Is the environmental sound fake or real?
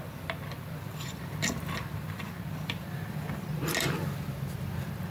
fake